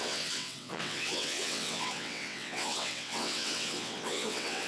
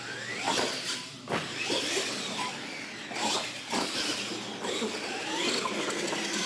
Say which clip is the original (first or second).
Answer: second